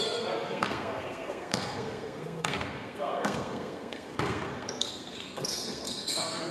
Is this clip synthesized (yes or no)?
yes